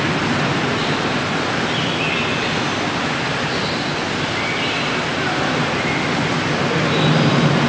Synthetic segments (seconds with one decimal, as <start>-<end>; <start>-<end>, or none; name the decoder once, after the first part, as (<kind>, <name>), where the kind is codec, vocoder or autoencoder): none